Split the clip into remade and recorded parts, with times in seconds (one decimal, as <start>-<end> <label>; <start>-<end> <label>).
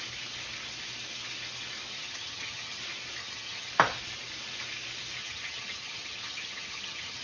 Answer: 0.0-1.9 recorded; 1.9-2.8 remade; 2.8-3.2 recorded; 3.2-3.7 remade; 3.7-5.2 recorded; 5.2-7.2 remade